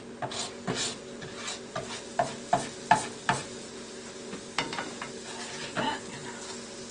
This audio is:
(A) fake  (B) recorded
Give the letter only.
B